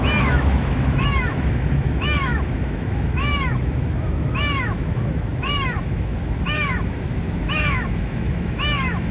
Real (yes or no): no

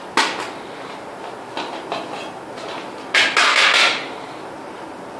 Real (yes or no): yes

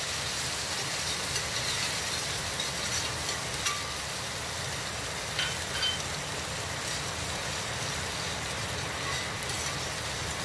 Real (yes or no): yes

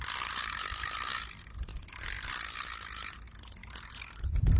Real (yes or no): yes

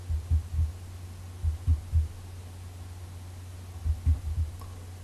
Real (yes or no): yes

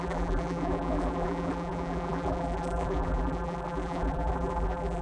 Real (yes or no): no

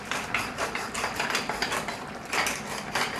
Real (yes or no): no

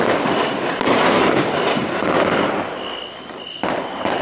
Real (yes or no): yes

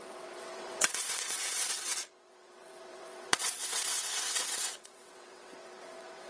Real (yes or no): no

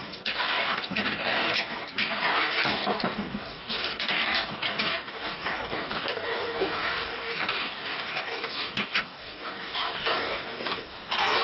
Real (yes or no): no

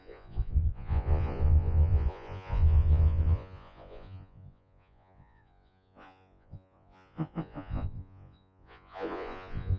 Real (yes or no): no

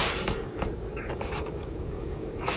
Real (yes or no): no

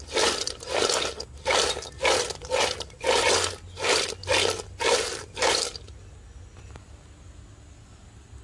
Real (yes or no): yes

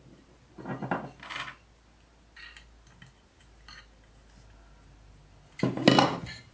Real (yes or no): yes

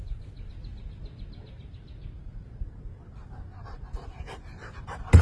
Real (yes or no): yes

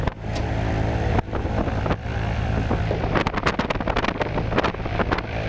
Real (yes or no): yes